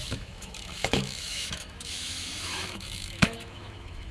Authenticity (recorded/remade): remade